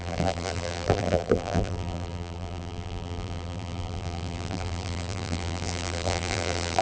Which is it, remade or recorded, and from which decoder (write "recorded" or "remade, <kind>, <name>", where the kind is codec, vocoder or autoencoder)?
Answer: remade, vocoder, BigVGAN v2